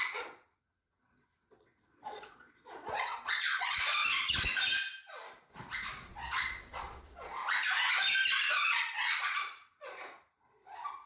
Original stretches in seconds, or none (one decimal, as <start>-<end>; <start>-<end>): 4.0-6.1; 7.4-8.5

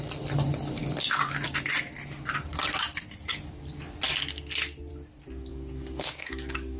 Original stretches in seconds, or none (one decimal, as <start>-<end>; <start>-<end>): 0.0-5.5

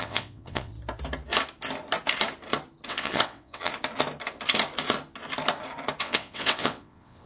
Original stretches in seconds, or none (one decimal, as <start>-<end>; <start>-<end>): 0.7-2.9; 3.7-6.0